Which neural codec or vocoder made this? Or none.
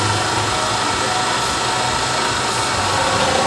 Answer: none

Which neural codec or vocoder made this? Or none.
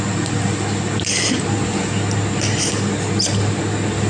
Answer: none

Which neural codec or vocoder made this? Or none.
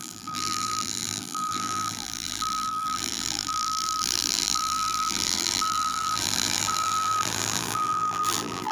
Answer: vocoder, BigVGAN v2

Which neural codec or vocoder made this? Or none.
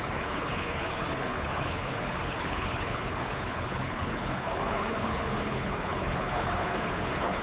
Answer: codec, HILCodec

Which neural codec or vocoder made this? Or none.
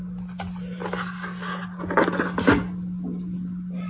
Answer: none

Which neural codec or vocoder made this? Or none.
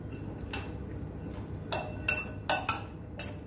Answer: none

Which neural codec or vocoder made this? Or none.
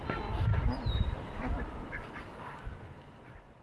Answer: none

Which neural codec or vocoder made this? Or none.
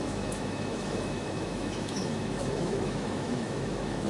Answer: autoencoder, DAC-VAE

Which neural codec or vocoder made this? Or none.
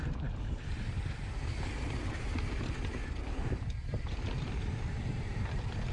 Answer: none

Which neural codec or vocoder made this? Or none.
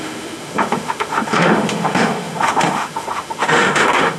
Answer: autoencoder, DAC-VAE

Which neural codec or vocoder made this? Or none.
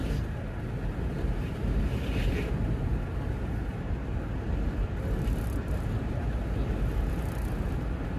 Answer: none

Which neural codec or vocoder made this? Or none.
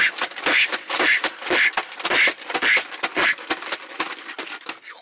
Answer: none